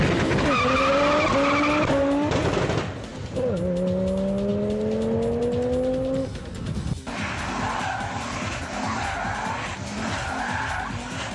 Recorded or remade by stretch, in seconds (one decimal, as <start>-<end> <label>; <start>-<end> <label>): 0.0-11.3 recorded